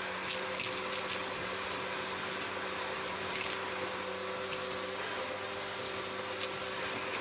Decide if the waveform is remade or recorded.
recorded